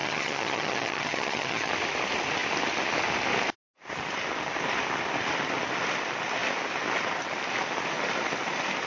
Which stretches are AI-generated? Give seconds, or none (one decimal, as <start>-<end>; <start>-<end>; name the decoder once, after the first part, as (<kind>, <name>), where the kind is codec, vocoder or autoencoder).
0.0-1.7 (vocoder, HiFi-GAN)